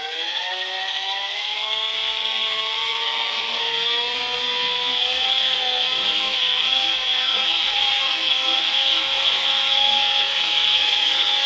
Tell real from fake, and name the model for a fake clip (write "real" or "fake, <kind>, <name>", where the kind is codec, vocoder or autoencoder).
fake, codec, SNAC